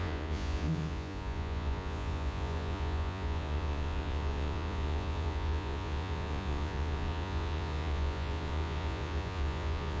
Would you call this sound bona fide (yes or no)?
no